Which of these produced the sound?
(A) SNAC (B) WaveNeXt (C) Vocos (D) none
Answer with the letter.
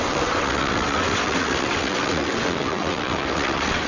B